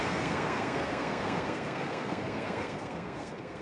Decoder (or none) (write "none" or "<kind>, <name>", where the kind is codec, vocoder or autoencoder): codec, SNAC